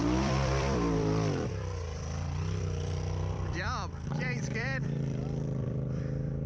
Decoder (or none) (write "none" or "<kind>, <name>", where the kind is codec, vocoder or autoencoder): vocoder, BigVGAN v2